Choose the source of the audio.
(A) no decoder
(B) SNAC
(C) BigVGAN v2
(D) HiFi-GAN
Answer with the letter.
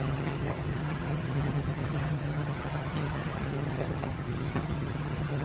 D